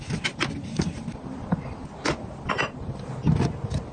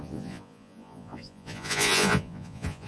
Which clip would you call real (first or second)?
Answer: first